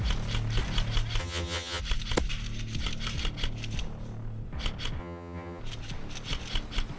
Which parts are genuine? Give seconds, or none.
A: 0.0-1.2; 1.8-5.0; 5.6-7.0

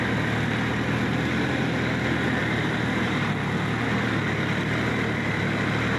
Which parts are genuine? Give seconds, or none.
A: 0.0-2.4; 3.3-6.0

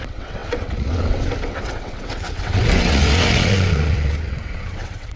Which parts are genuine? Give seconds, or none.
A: none

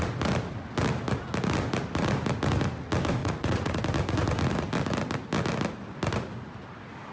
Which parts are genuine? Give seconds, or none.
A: 0.0-3.2; 3.8-7.1

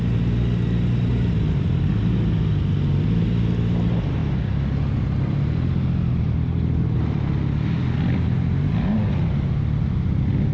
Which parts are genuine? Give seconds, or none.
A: 0.0-10.5

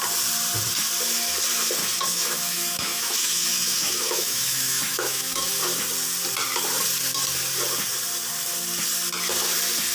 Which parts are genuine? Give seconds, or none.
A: 0.0-1.8; 5.5-9.9

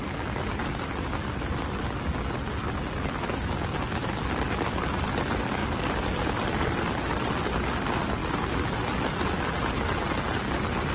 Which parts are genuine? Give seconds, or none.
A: 0.0-10.9